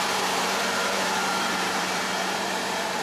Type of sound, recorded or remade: remade